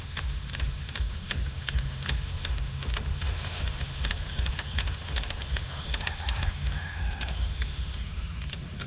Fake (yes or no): yes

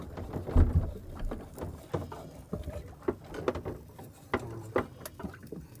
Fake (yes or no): no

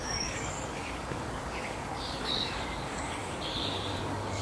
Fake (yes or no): yes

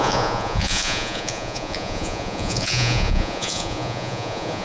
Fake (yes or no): yes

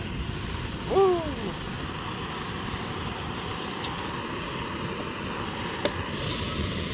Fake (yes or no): no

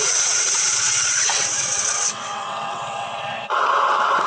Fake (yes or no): yes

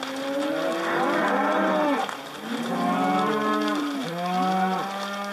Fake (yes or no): no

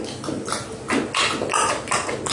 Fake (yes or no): no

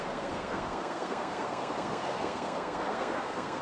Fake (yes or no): yes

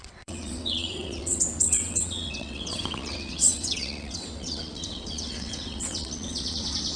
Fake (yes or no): yes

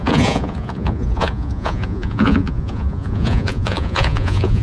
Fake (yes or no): yes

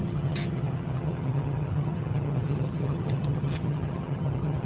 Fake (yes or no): yes